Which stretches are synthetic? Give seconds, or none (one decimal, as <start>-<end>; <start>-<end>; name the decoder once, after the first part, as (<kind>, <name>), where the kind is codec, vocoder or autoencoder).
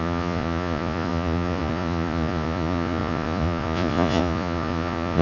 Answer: 0.0-5.2 (vocoder, Vocos)